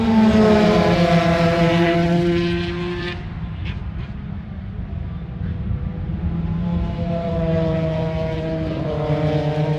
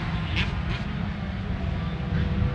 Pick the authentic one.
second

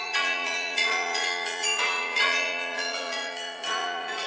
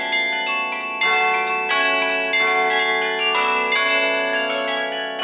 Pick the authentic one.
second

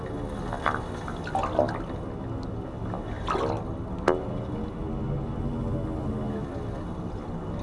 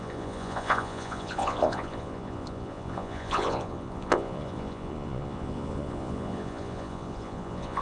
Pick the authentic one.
first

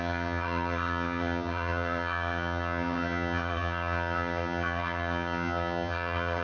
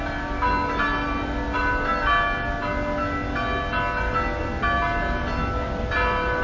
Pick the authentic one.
second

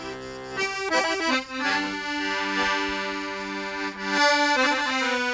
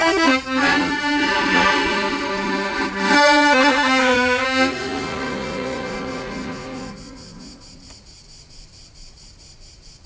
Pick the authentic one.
first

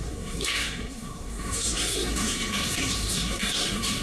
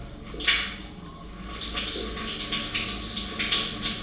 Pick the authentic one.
second